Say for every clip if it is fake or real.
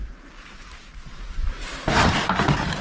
fake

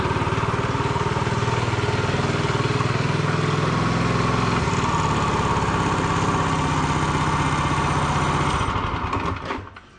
real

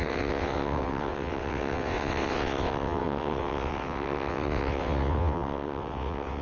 fake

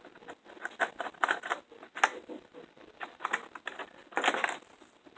real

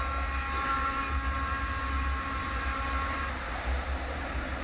real